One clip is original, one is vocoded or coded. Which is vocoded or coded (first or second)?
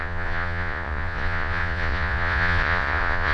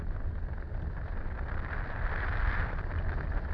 first